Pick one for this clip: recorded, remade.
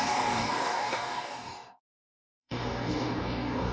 remade